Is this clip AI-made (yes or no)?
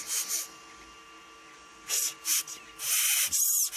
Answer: no